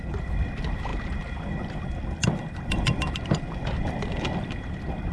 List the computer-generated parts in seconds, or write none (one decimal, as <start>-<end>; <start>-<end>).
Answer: none